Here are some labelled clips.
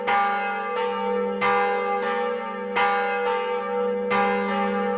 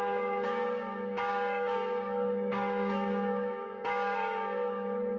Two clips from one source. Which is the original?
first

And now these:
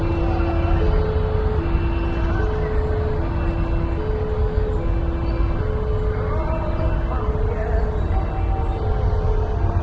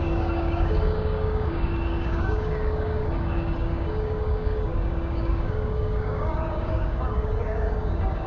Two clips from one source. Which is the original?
first